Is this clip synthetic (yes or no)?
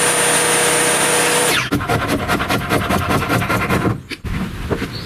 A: no